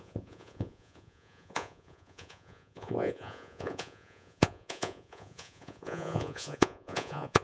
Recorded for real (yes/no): no